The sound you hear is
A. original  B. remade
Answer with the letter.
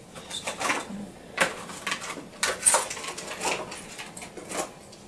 A